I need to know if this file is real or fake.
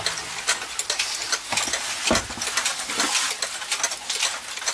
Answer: real